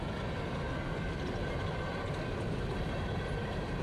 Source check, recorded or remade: recorded